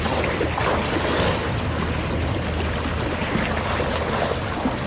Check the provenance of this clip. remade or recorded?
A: recorded